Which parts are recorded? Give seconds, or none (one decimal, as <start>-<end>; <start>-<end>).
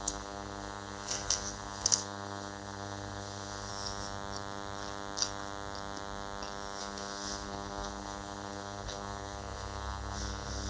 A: 3.7-6.8